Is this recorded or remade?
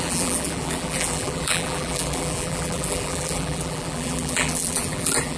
remade